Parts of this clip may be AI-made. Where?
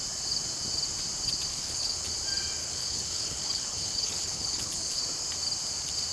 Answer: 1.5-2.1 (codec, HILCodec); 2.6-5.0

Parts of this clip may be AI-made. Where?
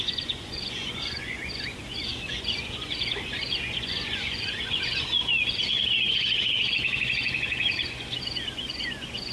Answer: 0.0-9.3 (vocoder, Vocos)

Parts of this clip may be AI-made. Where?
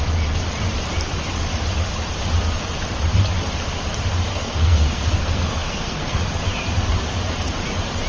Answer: 4.3-6.2 (codec, SNAC)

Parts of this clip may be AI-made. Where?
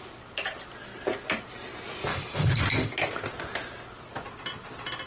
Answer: 2.1-2.6 (codec, HILCodec)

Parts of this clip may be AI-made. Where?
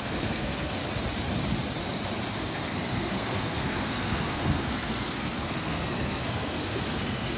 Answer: 0.0-0.8 (codec, SNAC); 2.3-7.4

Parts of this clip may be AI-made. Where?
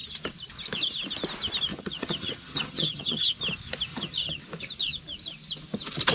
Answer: 1.7-3.4 (vocoder, HiFi-GAN); 3.9-4.4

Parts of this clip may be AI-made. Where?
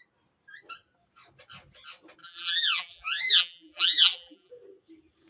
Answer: 2.2-4.5 (vocoder, BigVGAN v2)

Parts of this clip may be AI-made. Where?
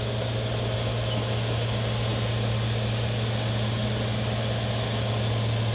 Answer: none